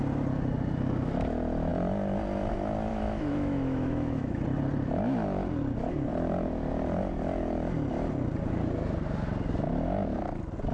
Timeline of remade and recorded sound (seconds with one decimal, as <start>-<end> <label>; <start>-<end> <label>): 0.0-2.9 recorded; 2.9-4.4 remade; 4.4-10.7 recorded